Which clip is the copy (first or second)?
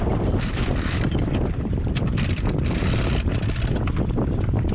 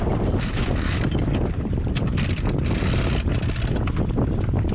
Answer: first